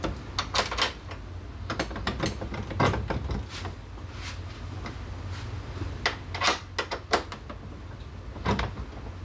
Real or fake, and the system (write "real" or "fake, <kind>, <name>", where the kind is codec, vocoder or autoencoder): real